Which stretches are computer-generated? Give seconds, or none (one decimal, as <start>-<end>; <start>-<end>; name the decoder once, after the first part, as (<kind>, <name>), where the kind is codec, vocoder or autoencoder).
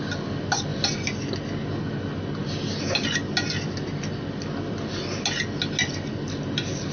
none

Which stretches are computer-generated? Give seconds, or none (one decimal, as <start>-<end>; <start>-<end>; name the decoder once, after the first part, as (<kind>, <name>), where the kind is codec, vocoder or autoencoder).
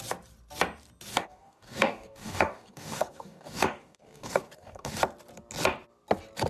1.1-5.0 (codec, DAC)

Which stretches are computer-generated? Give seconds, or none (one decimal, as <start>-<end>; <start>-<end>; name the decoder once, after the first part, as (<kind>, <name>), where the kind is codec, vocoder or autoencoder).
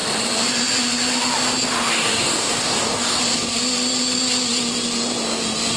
1.9-3.2 (codec, DAC)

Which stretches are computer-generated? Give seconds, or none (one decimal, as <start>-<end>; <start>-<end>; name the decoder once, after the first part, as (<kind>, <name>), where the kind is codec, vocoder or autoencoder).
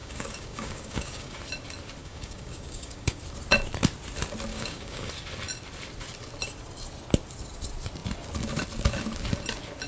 0.0-1.4 (codec, DAC); 2.0-3.2; 4.5-5.1